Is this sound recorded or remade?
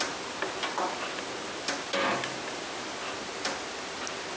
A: recorded